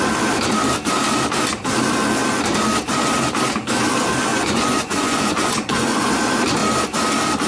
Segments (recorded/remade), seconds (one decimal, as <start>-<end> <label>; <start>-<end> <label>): 0.0-4.3 recorded; 4.3-6.1 remade; 6.1-7.5 recorded